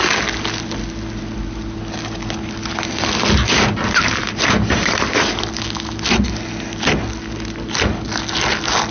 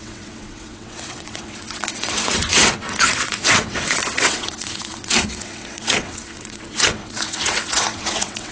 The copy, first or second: second